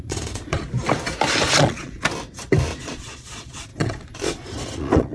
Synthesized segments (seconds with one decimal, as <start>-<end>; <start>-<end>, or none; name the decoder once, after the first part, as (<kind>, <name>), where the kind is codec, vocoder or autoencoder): 0.0-0.6 (vocoder, Vocos); 1.6-2.0; 2.8-5.1